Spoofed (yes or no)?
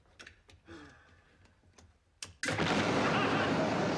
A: no